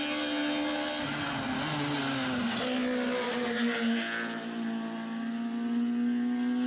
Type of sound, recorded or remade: recorded